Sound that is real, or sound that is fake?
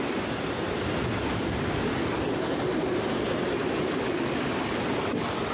real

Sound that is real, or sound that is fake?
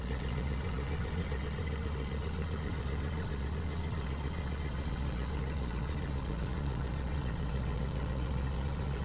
fake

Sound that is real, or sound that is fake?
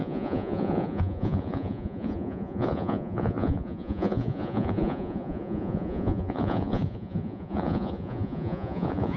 fake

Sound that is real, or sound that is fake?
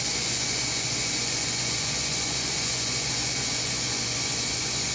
fake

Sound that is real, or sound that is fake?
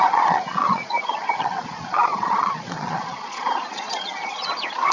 fake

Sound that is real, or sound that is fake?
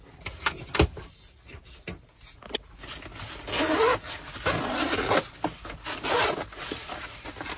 real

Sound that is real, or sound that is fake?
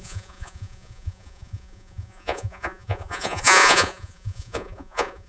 fake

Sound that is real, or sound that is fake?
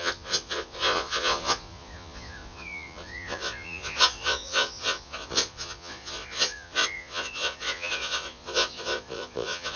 fake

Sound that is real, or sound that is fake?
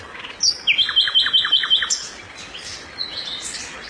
real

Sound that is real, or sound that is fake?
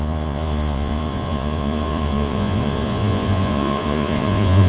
fake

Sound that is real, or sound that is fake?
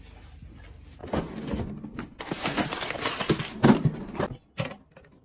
real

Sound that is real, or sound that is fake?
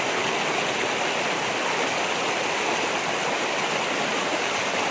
real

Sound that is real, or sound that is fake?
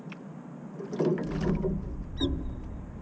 real